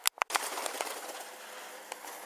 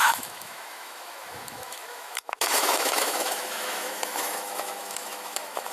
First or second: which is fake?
second